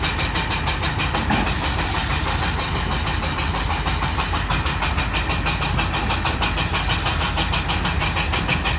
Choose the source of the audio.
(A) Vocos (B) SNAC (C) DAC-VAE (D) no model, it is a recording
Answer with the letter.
D